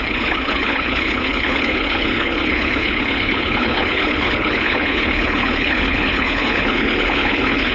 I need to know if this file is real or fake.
fake